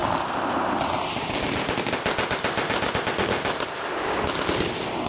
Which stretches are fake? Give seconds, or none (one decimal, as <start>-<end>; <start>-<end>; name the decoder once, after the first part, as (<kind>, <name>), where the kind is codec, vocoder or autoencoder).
none